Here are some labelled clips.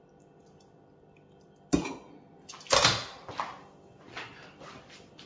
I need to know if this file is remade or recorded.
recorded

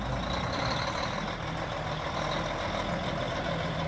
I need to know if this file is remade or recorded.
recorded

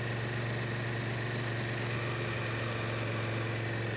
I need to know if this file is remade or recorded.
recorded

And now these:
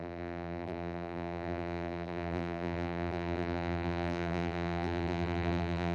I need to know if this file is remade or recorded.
remade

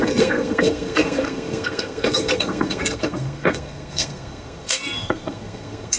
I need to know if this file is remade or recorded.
remade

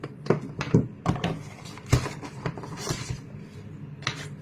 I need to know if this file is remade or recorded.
remade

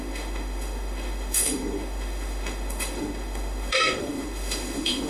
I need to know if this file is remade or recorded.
remade